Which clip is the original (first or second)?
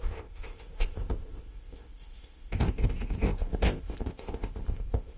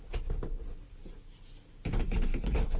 second